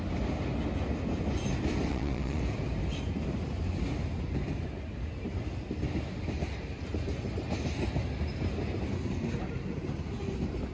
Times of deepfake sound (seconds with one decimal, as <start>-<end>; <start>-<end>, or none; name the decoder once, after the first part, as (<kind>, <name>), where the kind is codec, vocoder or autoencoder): 1.9-2.4 (vocoder, Vocos)